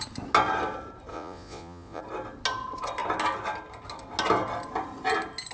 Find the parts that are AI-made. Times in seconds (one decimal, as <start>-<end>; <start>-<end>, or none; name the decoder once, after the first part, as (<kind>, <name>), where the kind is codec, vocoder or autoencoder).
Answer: 1.1-2.0 (vocoder, Vocos)